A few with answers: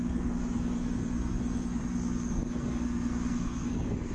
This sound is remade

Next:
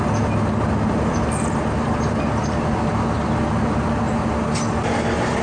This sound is recorded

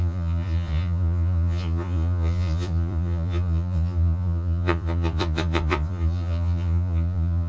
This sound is remade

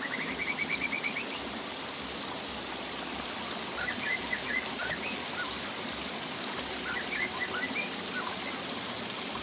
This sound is recorded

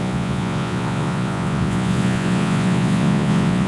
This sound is remade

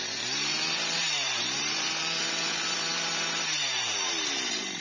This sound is remade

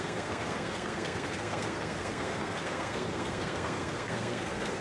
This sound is remade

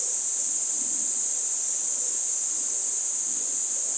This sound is remade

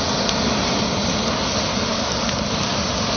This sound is recorded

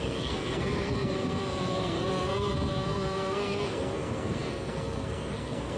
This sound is remade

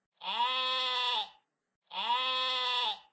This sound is recorded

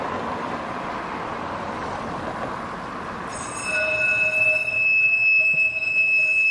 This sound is recorded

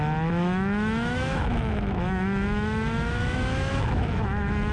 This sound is remade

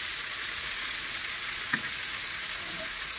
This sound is remade